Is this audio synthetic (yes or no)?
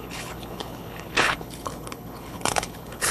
yes